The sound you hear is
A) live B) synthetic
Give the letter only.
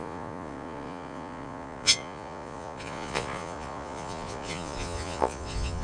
B